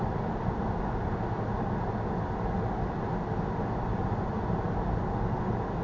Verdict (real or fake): real